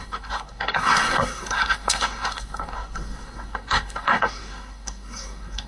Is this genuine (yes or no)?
no